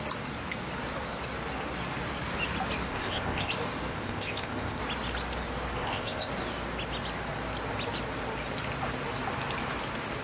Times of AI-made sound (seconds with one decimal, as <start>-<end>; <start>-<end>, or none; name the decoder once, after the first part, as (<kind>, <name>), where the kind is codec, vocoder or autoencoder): 2.9-3.5 (codec, ZipCodec); 3.9-4.8; 5.8-6.3